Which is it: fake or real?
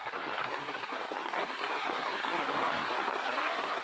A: fake